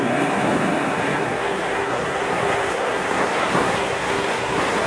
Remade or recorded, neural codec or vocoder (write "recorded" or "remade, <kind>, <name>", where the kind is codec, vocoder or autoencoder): remade, codec, SNAC